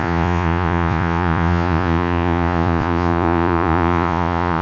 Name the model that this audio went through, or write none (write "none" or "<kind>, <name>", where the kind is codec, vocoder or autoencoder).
vocoder, Vocos